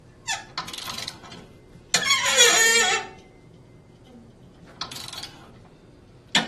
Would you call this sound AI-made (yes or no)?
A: no